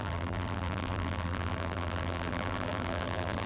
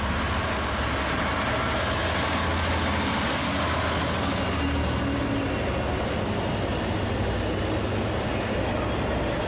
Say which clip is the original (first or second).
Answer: second